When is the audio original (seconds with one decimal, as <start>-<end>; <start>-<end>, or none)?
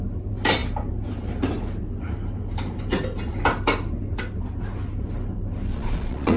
0.0-5.7